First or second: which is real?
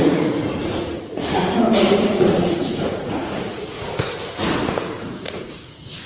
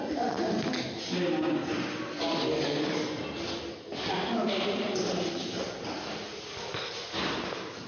second